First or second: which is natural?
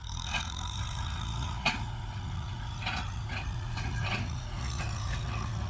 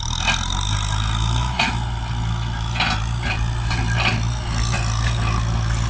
second